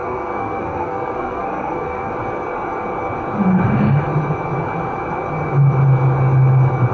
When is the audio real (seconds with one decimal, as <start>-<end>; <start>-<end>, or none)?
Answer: 2.1-6.9